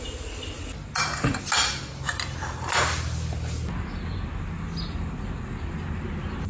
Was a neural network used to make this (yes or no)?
no